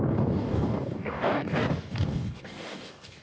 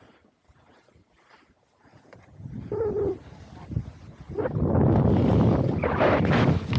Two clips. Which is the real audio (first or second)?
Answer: second